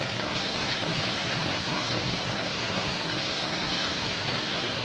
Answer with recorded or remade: remade